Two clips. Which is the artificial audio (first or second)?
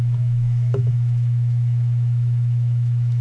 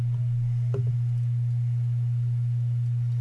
first